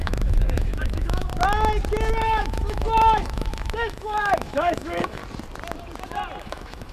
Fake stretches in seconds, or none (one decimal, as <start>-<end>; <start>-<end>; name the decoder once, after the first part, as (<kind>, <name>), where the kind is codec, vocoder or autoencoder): 0.0-1.3 (autoencoder, DAC-VAE); 2.1-5.2; 6.4-6.9